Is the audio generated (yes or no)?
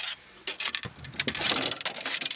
no